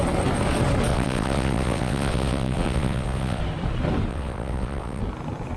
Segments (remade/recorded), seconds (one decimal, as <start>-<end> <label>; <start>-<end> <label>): 0.0-0.9 recorded; 0.9-3.4 remade; 3.4-4.1 recorded; 4.1-5.0 remade; 5.0-5.6 recorded